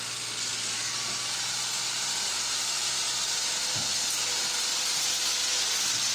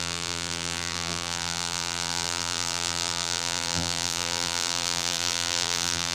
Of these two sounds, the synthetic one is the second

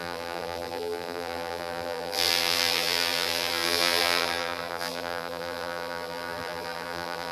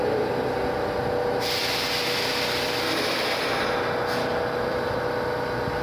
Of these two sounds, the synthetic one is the first